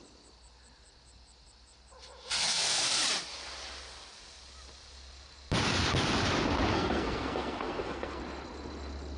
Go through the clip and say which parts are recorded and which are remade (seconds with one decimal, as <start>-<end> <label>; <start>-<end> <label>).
0.0-2.5 recorded; 2.5-3.0 remade; 3.0-6.7 recorded; 6.7-8.2 remade; 8.2-9.2 recorded